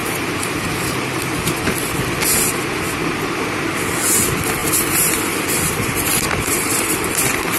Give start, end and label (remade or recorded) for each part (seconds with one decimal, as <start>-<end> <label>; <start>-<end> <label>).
0.0-1.2 remade; 1.2-4.6 recorded; 4.6-7.6 remade